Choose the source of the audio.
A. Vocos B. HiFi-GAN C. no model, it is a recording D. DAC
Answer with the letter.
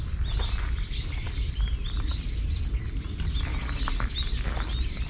C